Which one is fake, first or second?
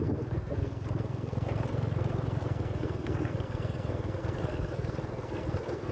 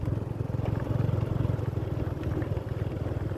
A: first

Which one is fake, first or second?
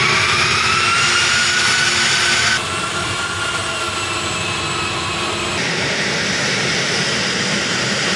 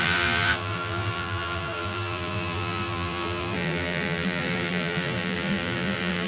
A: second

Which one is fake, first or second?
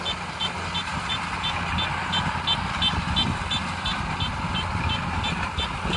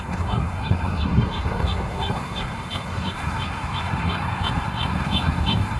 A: second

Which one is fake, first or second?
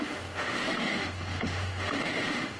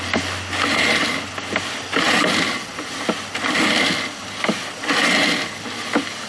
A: first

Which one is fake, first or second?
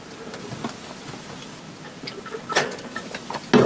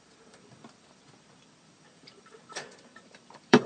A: second